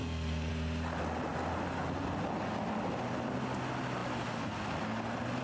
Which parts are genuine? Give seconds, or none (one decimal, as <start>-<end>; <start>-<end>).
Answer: 0.5-5.4

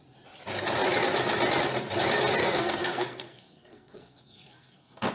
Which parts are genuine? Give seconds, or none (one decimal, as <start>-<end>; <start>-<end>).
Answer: 0.0-2.4

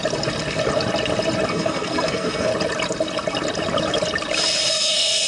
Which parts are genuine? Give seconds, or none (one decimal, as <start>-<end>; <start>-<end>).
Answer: 0.0-1.5; 2.5-4.7

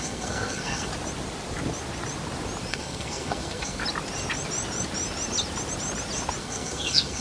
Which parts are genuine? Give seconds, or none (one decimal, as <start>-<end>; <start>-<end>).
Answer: 0.9-2.7; 3.8-6.4

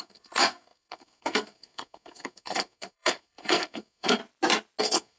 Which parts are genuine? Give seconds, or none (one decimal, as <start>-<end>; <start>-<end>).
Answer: 4.2-4.8

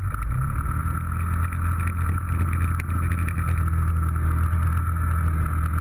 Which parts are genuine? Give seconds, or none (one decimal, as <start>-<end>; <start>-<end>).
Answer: 0.0-5.8

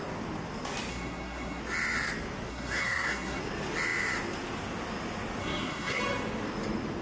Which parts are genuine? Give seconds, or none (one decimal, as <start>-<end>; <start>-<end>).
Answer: 0.0-0.9; 1.6-2.5; 3.4-5.4; 6.0-7.0

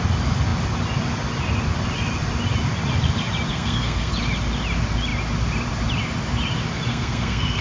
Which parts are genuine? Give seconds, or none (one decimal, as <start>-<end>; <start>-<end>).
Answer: 0.0-3.5; 4.1-6.9